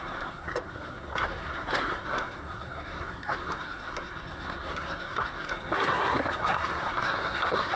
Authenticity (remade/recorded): remade